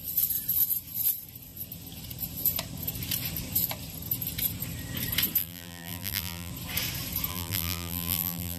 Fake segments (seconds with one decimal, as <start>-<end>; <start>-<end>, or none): 5.4-6.5; 7.3-8.6

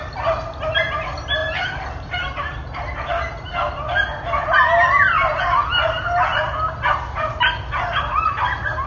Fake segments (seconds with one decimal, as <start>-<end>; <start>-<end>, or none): none

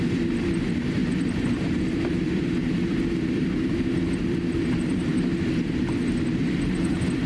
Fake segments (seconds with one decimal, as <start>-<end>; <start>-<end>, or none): 0.0-1.0; 2.0-5.1; 6.3-7.3

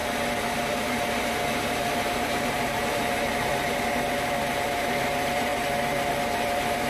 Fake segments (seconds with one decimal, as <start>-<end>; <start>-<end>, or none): 2.2-3.5; 4.7-5.5; 6.1-6.9

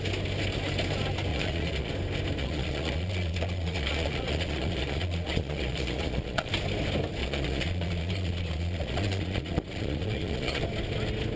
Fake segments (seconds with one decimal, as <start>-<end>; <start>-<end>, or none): 1.3-1.9; 2.4-6.5; 7.2-10.6

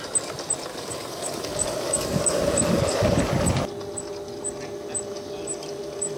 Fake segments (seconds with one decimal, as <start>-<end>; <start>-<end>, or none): 0.7-3.2